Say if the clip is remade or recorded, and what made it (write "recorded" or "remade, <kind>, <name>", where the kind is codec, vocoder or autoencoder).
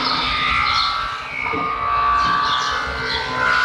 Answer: recorded